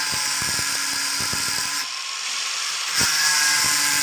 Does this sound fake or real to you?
real